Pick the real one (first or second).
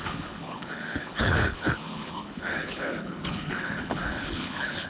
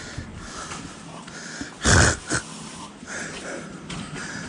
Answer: second